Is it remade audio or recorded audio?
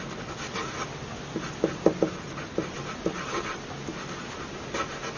recorded